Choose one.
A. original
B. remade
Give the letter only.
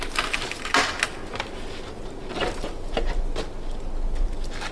A